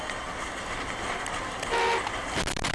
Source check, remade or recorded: recorded